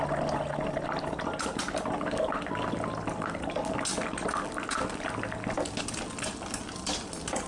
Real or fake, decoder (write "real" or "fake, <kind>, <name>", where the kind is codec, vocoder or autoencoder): real